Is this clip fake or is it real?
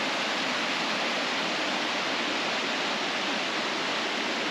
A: real